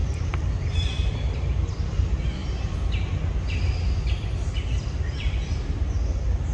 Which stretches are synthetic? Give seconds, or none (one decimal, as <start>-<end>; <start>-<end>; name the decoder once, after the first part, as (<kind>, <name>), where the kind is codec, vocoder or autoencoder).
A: 0.0-1.1 (vocoder, BigVGAN v2)